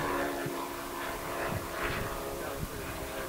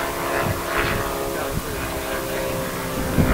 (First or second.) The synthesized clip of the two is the first